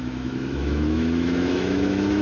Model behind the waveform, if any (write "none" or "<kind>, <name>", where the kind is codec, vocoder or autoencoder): autoencoder, DAC-VAE